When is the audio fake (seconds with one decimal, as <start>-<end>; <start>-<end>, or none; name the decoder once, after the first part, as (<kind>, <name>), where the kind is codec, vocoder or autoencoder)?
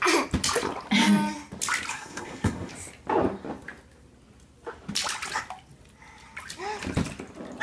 1.9-2.7 (codec, SNAC)